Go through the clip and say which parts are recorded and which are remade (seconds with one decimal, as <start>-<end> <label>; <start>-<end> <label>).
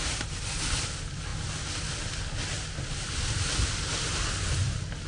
0.0-5.1 recorded